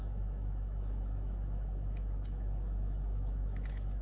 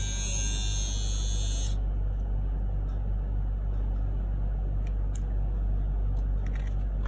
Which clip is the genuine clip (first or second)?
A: second